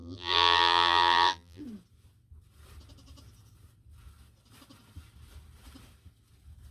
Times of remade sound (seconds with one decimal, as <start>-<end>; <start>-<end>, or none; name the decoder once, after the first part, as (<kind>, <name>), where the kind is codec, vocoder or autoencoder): 0.0-1.6 (vocoder, BigVGAN v2)

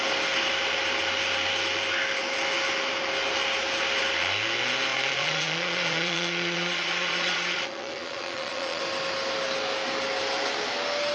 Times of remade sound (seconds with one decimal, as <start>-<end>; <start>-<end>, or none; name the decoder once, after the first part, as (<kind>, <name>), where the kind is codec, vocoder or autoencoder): 4.9-8.8 (vocoder, Vocos)

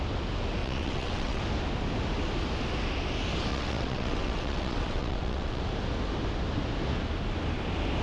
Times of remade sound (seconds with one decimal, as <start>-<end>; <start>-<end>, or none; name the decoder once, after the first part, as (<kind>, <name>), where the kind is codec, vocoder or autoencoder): 0.6-1.4 (vocoder, WaveNeXt); 3.5-5.6

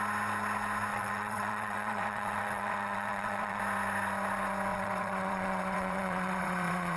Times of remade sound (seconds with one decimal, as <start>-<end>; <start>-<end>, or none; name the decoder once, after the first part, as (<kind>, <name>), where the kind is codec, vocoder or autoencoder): 0.9-3.6 (vocoder, WaveNeXt); 4.7-7.0

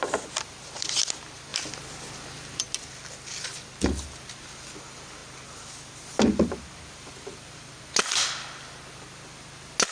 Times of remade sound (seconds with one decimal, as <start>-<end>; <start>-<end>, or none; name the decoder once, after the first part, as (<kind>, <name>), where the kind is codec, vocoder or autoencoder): none

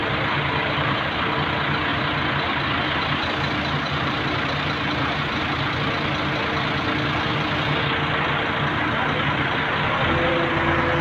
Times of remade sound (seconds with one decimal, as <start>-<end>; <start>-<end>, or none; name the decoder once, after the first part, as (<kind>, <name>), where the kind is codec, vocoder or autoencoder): 0.0-1.3 (vocoder, BigVGAN v2); 1.9-5.4

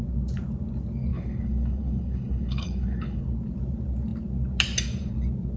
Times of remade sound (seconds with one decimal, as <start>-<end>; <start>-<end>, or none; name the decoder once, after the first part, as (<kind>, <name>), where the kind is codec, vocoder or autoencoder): 1.1-3.2 (codec, HILCodec)